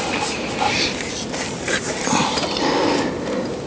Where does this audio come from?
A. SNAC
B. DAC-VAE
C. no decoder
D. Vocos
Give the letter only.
C